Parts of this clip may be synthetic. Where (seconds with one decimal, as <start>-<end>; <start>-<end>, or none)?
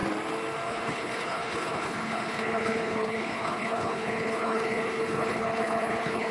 0.7-6.3